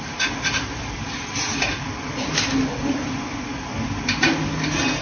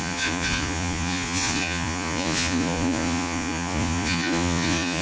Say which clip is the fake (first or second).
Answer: second